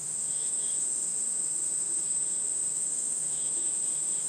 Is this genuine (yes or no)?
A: no